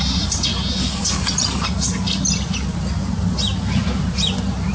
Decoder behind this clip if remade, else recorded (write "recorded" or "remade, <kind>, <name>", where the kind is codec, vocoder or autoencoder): recorded